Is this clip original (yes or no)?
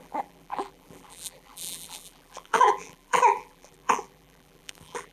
no